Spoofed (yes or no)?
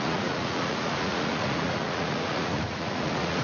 yes